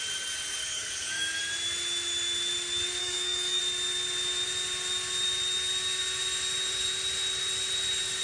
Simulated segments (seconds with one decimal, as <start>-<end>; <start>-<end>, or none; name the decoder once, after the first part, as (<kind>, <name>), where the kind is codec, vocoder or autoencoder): 0.6-1.4 (codec, DAC); 3.0-3.6

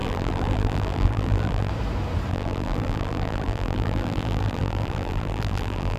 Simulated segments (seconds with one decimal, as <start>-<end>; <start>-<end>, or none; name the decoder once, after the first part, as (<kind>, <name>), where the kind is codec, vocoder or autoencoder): 0.0-1.7 (vocoder, BigVGAN v2); 2.3-6.0

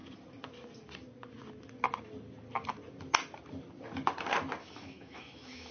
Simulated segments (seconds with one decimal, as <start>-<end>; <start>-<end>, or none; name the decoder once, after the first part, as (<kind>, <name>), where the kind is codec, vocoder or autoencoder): 4.6-5.7 (autoencoder, DAC-VAE)

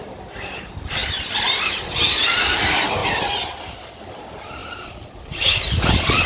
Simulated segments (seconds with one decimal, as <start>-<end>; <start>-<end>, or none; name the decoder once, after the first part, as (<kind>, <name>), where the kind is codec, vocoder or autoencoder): 1.0-1.8 (vocoder, BigVGAN v2); 4.6-6.3